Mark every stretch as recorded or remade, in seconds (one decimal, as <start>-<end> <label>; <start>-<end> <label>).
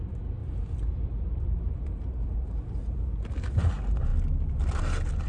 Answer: 0.0-0.4 recorded; 0.4-3.6 remade; 3.6-4.1 recorded; 4.1-4.8 remade; 4.8-5.3 recorded